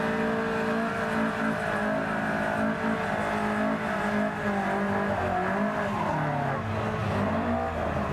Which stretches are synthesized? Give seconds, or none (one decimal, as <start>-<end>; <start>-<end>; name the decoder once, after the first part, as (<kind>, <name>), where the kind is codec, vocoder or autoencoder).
none